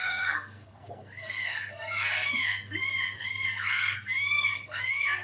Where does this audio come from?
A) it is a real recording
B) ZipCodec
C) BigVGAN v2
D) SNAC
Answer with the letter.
D